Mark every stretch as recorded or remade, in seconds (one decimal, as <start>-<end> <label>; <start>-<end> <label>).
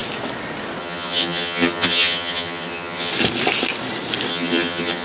0.0-0.8 recorded; 0.8-3.1 remade; 3.1-4.3 recorded; 4.3-5.0 remade